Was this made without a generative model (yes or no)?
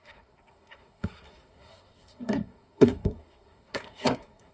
no